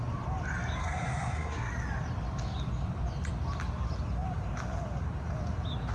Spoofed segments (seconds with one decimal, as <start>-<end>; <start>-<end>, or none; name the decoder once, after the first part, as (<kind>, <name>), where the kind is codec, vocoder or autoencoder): 0.8-1.7 (codec, SNAC)